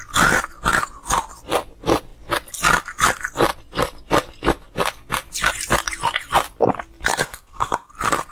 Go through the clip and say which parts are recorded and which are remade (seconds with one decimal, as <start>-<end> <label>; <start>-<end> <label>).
0.0-7.1 recorded; 7.1-7.9 remade; 7.9-8.3 recorded